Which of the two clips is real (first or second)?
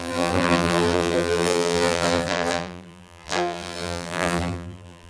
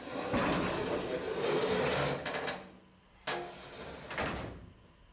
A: second